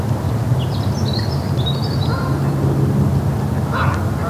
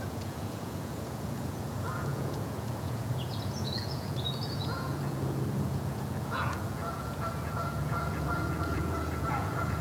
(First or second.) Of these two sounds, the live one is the first